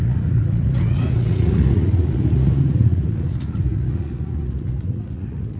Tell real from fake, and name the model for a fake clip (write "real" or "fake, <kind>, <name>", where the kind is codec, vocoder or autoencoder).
fake, vocoder, Vocos